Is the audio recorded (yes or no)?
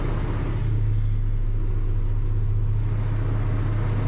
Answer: yes